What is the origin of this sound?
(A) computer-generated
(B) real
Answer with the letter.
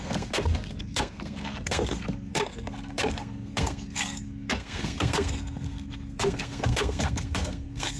A